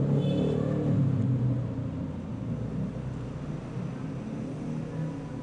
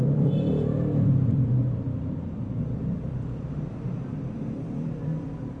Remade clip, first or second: second